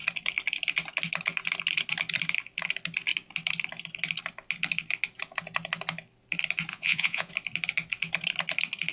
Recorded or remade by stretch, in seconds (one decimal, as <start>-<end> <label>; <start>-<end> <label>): 0.0-6.7 recorded; 6.7-7.3 remade; 7.3-8.9 recorded